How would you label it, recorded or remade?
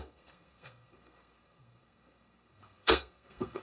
remade